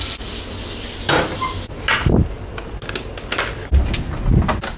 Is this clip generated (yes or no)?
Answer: no